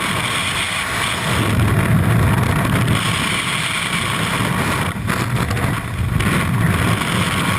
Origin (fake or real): real